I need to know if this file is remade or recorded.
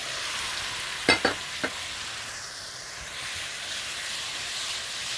recorded